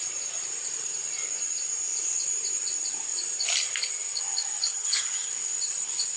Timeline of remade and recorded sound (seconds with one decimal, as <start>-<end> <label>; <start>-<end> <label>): 0.0-4.7 recorded; 4.7-5.3 remade; 5.3-6.2 recorded